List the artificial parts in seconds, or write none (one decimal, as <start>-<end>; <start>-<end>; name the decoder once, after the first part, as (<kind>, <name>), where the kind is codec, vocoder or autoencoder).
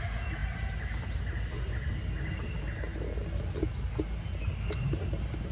none